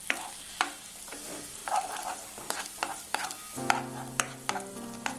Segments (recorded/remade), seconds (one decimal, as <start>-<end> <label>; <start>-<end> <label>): 0.0-5.2 recorded